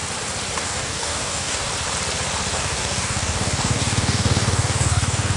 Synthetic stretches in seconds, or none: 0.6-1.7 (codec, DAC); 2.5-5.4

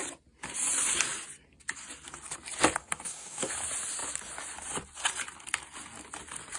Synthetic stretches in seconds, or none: 2.8-3.5 (codec, DAC)

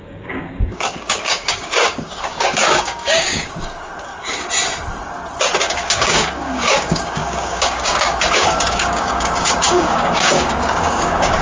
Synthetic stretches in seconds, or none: 0.0-4.1 (codec, DAC); 5.6-11.4